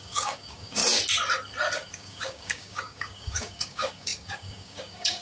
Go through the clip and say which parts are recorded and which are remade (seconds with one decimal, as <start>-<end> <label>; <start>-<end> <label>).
0.0-0.8 remade; 0.8-1.9 recorded; 1.9-5.2 remade